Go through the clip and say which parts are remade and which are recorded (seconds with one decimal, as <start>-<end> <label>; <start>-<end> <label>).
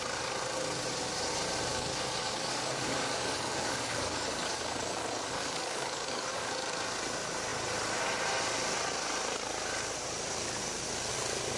0.0-1.7 recorded; 1.7-6.5 remade; 6.5-11.6 recorded